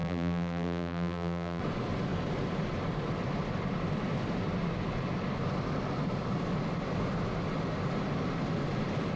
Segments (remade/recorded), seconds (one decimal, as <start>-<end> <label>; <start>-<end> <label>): 0.0-1.6 remade; 1.6-9.2 recorded

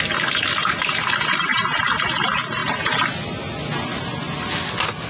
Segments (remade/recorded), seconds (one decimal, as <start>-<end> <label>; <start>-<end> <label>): 0.0-0.6 recorded; 0.6-1.8 remade; 1.8-5.1 recorded

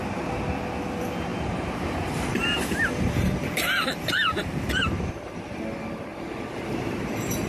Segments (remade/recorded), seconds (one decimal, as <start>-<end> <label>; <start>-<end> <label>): 0.0-1.3 recorded; 1.3-5.6 remade; 5.6-7.5 recorded

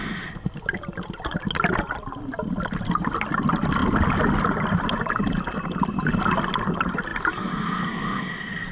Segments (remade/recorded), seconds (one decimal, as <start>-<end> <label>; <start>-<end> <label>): 0.0-8.7 recorded